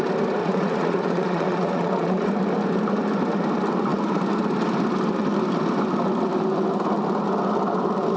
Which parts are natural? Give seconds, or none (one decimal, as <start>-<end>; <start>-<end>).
0.0-0.4; 2.3-8.2